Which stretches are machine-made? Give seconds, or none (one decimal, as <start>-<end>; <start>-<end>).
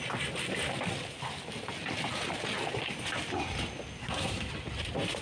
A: 4.0-4.5